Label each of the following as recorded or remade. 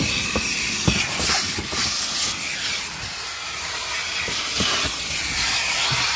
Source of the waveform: recorded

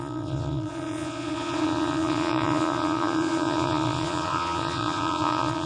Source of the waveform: remade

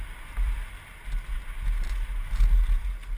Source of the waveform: recorded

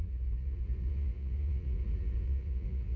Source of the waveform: remade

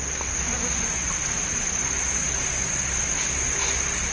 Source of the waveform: recorded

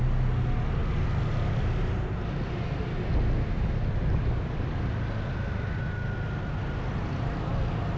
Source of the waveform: recorded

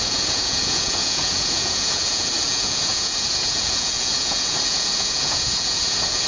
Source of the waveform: remade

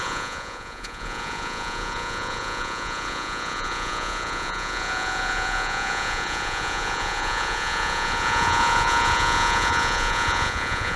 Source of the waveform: remade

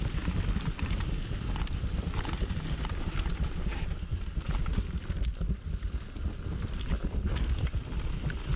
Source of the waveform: recorded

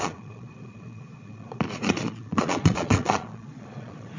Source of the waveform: remade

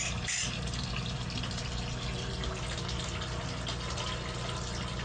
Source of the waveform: recorded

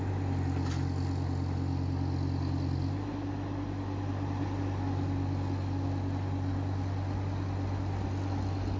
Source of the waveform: recorded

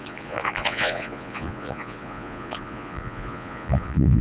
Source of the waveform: remade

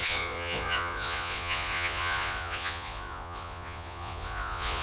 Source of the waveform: remade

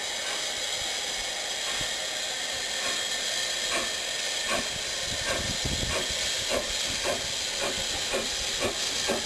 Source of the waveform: recorded